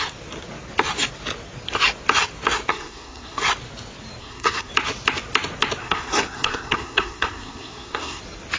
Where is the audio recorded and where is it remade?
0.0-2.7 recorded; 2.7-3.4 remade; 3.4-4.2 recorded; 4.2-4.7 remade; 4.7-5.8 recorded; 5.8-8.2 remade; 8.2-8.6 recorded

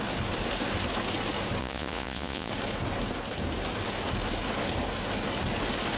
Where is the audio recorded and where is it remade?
0.0-1.6 recorded; 1.6-2.5 remade; 2.5-6.0 recorded

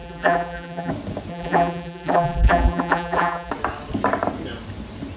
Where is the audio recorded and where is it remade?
0.0-0.9 remade; 0.9-1.3 recorded; 1.3-3.5 remade; 3.5-5.2 recorded

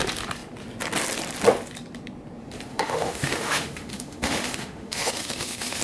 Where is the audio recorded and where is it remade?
0.0-2.7 recorded; 2.7-5.8 remade

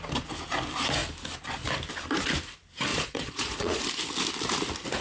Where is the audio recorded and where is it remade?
0.0-2.9 recorded; 2.9-3.8 remade; 3.8-5.0 recorded